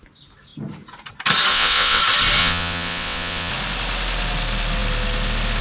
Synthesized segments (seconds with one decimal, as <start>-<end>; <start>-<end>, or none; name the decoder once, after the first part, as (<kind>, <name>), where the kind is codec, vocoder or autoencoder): 1.5-2.0 (vocoder, WaveNeXt); 2.4-3.5